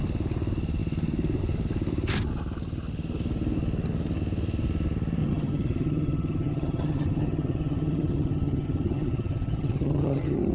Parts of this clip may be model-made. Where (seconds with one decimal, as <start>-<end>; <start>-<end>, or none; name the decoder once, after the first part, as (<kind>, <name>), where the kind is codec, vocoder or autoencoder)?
5.2-10.5 (vocoder, HiFi-GAN)